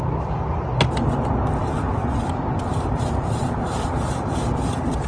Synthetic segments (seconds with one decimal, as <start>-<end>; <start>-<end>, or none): 1.6-5.1